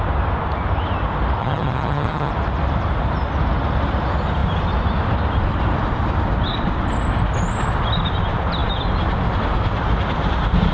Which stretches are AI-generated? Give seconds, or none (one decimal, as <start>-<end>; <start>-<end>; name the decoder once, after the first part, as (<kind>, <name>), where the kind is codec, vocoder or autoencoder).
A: 1.4-2.3 (vocoder, HiFi-GAN)